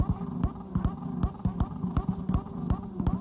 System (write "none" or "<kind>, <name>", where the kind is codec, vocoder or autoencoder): none